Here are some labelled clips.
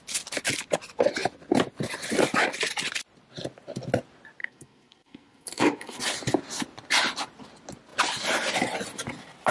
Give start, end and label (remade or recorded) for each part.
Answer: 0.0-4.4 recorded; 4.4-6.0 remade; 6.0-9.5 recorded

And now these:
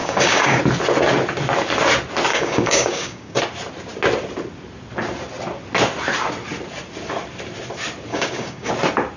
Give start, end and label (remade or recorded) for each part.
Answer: 0.0-0.6 remade; 0.6-2.3 recorded; 2.3-3.4 remade; 3.4-8.1 recorded; 8.1-8.7 remade; 8.7-9.2 recorded